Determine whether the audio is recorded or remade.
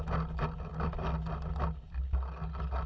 recorded